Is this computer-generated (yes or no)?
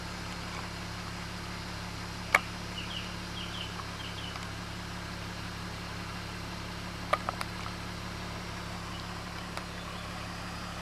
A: no